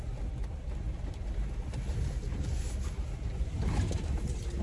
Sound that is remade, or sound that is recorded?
recorded